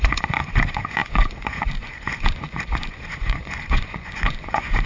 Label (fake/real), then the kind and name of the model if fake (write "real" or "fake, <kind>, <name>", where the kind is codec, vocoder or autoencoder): fake, vocoder, Vocos